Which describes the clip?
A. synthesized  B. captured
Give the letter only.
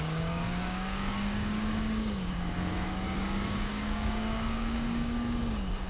A